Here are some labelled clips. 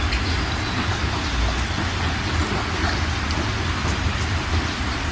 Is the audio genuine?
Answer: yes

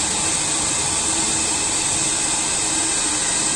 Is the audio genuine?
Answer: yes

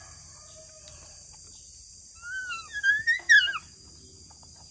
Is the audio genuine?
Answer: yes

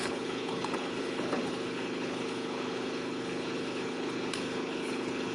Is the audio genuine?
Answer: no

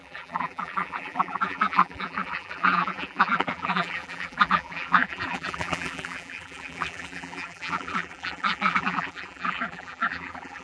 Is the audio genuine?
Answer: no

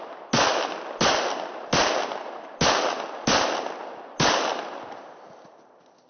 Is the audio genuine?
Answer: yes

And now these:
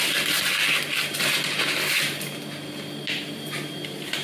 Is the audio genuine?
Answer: yes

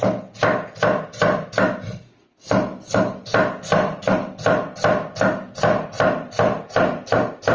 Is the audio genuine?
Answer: yes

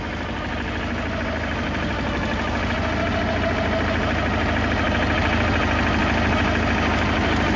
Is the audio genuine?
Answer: yes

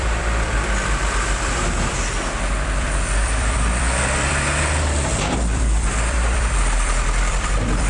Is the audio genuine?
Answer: no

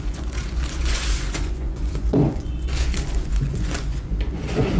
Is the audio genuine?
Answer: no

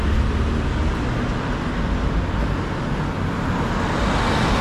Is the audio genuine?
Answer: yes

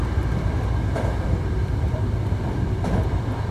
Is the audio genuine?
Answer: no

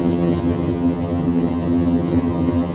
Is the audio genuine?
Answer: no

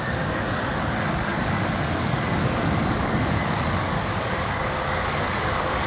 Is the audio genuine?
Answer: no